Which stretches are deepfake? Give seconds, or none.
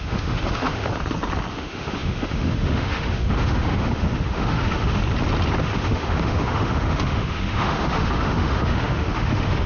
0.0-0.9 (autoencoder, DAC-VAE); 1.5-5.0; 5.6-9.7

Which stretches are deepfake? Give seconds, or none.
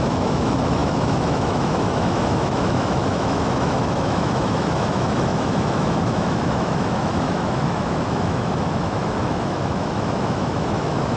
0.0-11.2 (autoencoder, DAC-VAE)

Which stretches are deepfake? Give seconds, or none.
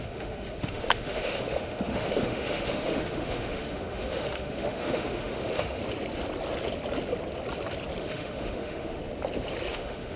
0.0-5.8 (autoencoder, DAC-VAE); 8.0-9.0; 9.7-10.2